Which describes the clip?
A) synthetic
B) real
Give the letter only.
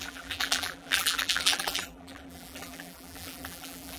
A